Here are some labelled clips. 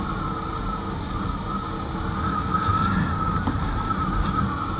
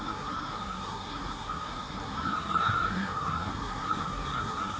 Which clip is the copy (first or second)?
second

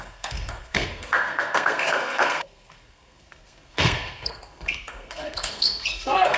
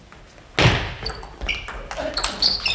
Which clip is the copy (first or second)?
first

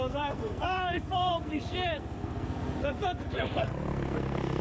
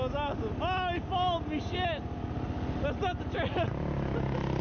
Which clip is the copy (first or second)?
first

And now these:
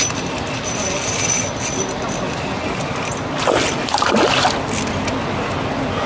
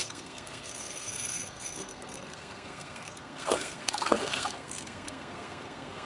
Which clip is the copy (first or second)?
second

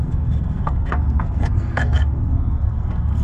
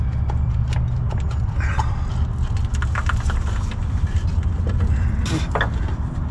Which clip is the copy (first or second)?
first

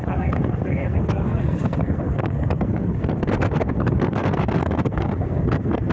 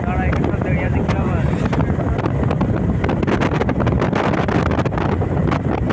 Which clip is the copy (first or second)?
first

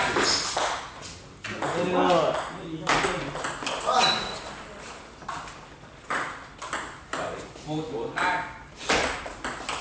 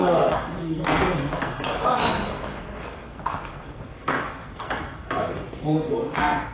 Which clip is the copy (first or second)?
second